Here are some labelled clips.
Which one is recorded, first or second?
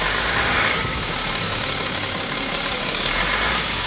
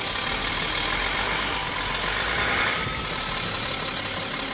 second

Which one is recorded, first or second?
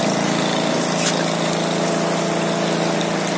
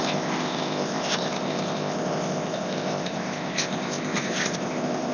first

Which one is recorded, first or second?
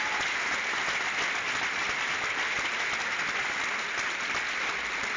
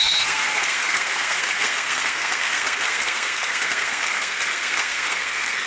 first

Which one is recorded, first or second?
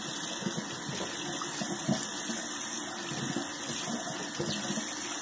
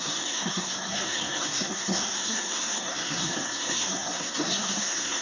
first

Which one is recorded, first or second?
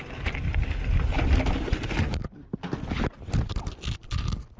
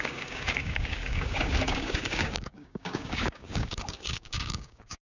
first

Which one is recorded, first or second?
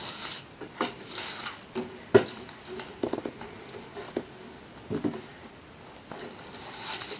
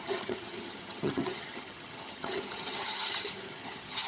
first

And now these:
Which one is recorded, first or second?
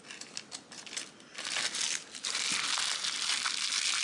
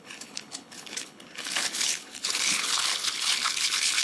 first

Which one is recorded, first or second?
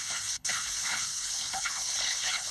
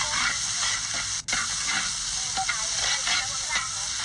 second